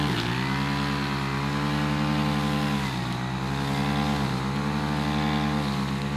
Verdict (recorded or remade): recorded